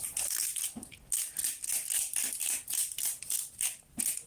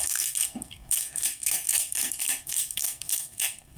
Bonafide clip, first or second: first